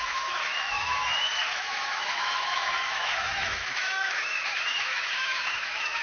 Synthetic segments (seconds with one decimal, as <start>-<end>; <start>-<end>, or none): 0.0-6.0